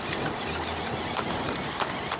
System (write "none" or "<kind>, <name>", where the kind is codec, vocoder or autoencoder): none